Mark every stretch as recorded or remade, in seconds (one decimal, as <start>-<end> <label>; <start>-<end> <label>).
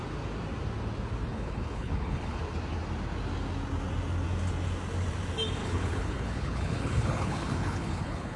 0.0-1.3 recorded; 1.3-2.4 remade; 2.4-5.6 recorded; 5.6-8.4 remade